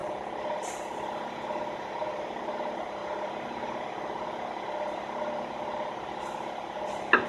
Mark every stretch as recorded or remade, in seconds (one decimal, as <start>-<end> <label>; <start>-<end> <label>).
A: 0.0-7.3 recorded

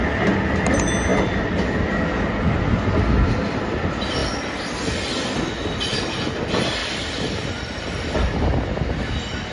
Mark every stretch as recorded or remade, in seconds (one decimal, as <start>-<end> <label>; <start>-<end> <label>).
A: 0.0-1.1 recorded; 1.1-1.8 remade; 1.8-6.8 recorded; 6.8-8.4 remade; 8.4-9.5 recorded

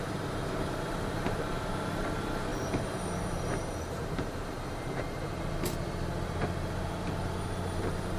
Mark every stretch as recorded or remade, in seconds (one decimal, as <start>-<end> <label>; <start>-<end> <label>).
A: 0.0-8.2 remade

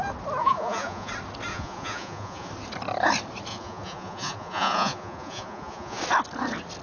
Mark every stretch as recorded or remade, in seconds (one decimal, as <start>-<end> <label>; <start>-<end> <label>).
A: 0.0-0.4 recorded; 0.4-1.1 remade; 1.1-1.5 recorded; 1.5-2.5 remade; 2.5-3.5 recorded; 3.5-6.0 remade; 6.0-6.8 recorded

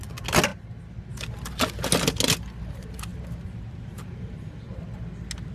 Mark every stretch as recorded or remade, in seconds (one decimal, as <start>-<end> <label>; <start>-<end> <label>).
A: 0.0-3.1 recorded; 3.1-4.6 remade; 4.6-5.5 recorded

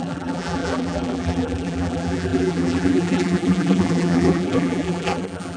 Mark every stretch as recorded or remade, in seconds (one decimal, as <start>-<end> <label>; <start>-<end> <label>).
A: 0.0-5.6 remade